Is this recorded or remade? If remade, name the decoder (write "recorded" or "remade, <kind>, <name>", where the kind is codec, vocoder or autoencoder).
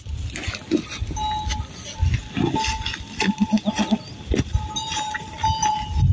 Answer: recorded